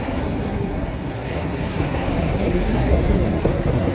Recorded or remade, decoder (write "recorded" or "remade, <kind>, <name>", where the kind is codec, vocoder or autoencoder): remade, codec, SNAC